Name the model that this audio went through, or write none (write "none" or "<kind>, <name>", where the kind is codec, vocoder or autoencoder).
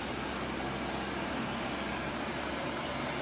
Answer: none